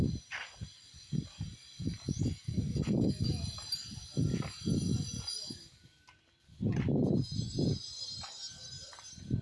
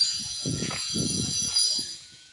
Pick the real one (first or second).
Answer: first